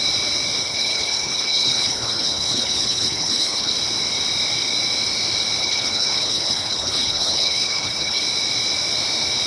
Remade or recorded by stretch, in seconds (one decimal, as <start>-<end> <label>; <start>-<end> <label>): 0.0-0.6 recorded; 0.6-3.7 remade; 3.7-5.6 recorded; 5.6-8.2 remade; 8.2-9.5 recorded